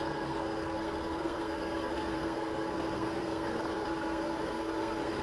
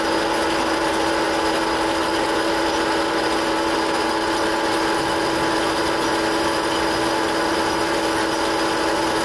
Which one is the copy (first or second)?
first